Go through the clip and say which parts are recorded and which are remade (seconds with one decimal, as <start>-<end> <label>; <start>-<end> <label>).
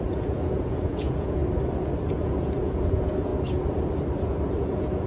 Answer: 0.0-1.4 remade; 1.4-2.1 recorded; 2.1-3.3 remade; 3.3-4.6 recorded; 4.6-5.1 remade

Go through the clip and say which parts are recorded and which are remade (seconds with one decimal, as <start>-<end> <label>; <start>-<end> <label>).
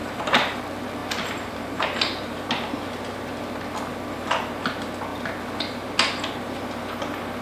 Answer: 0.0-0.6 remade; 0.6-1.0 recorded; 1.0-2.5 remade; 2.5-7.4 recorded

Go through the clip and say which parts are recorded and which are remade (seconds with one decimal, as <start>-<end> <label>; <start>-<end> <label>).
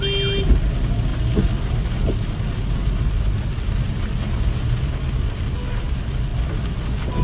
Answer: 0.0-7.2 recorded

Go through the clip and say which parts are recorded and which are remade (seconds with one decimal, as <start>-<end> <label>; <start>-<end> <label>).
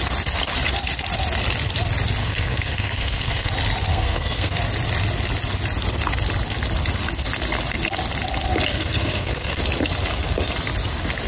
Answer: 0.0-2.2 recorded; 2.2-3.5 remade; 3.5-3.9 recorded; 3.9-4.6 remade; 4.6-8.7 recorded; 8.7-9.6 remade; 9.6-11.3 recorded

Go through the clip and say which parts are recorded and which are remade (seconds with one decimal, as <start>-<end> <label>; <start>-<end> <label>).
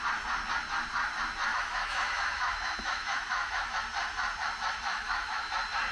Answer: 0.0-1.5 recorded; 1.5-3.8 remade; 3.8-4.9 recorded; 4.9-5.5 remade; 5.5-5.9 recorded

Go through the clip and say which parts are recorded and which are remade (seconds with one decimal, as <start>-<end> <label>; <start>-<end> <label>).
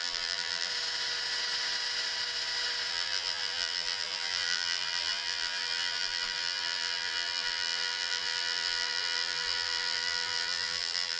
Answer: 0.0-0.7 remade; 0.7-2.9 recorded; 2.9-11.2 remade